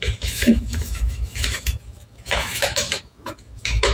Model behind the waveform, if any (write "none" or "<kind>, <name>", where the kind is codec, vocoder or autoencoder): autoencoder, DAC-VAE